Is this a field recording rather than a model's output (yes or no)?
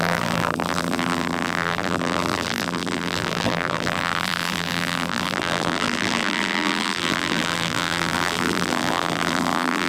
no